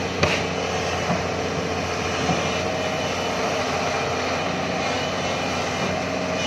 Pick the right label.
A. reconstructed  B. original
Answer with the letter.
B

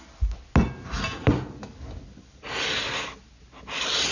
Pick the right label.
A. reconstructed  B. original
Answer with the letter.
B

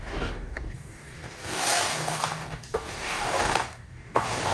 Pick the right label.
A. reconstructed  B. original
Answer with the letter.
A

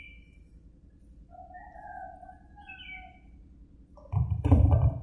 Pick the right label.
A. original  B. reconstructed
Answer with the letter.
A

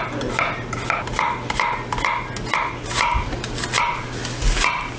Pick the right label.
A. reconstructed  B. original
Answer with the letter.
B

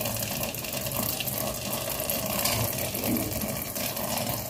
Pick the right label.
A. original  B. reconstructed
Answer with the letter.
A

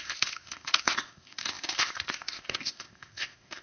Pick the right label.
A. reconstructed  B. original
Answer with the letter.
A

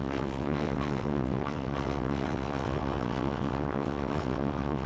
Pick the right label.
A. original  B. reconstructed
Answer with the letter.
B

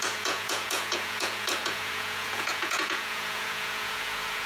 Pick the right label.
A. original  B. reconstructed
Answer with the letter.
B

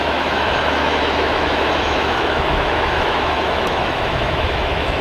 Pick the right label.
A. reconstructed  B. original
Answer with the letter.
A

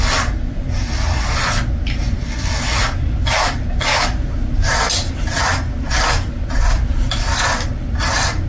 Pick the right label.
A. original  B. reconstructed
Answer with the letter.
A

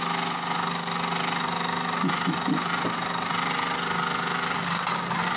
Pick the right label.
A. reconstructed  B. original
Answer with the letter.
B